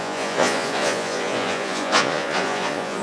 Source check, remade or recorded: remade